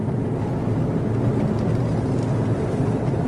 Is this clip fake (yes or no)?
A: no